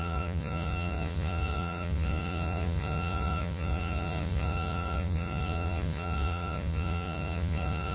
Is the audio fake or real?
fake